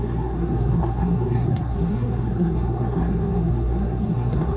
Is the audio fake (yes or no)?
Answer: yes